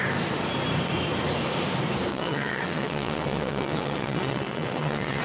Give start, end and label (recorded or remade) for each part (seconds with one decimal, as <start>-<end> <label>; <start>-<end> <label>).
0.0-2.1 recorded; 2.1-5.2 remade